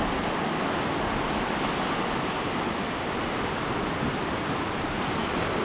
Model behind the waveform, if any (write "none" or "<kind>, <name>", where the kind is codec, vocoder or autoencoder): none